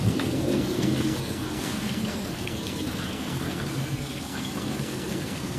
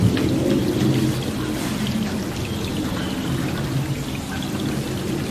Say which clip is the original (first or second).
second